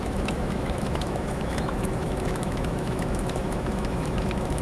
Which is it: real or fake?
fake